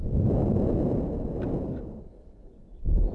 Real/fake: real